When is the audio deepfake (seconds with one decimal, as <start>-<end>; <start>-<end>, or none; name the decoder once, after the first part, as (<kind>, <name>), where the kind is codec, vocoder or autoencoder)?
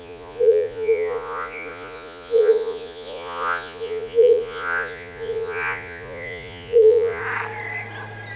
0.0-7.2 (vocoder, Vocos)